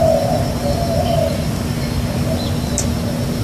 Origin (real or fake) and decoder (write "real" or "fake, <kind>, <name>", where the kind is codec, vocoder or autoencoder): real